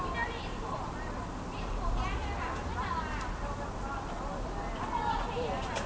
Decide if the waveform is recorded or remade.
recorded